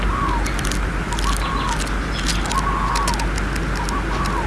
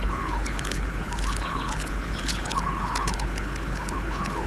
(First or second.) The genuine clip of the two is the first